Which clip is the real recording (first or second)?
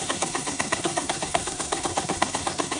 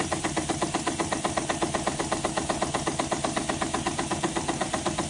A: second